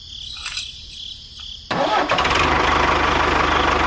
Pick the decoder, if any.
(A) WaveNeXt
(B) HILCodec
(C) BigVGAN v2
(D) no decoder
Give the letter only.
D